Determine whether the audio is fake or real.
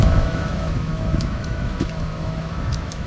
fake